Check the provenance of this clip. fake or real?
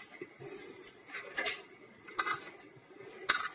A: fake